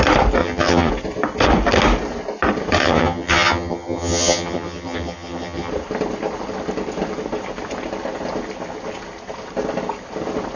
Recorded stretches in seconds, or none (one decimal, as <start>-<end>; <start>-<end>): 0.0-0.4; 0.9-2.8; 5.7-10.6